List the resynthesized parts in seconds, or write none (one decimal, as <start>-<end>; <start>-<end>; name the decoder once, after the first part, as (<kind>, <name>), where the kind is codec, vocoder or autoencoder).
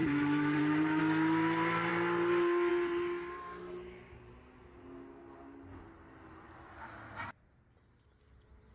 0.0-1.0 (vocoder, BigVGAN v2)